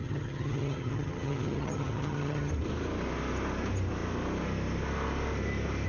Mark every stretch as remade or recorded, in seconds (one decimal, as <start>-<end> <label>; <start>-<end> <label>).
0.0-2.5 remade; 2.5-5.9 recorded